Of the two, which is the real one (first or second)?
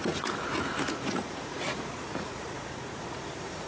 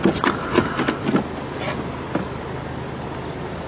second